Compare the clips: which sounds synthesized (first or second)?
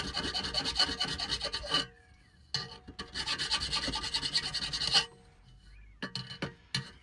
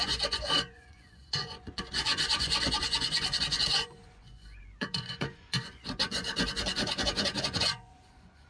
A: second